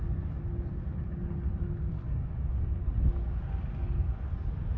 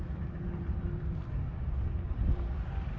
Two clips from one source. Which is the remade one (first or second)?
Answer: second